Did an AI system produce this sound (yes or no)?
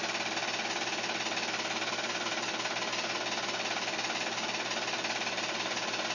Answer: no